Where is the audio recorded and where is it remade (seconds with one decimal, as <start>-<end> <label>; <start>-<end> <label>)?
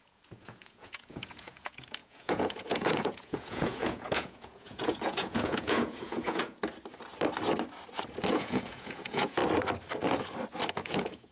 0.0-6.6 remade; 6.6-8.3 recorded; 8.3-9.4 remade; 9.4-10.7 recorded; 10.7-11.3 remade